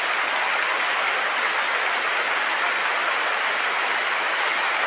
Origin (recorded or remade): recorded